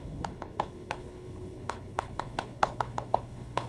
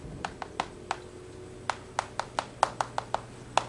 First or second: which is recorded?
second